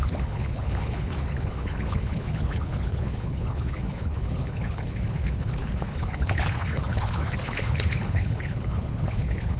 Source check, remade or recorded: remade